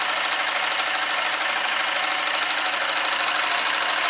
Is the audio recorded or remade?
recorded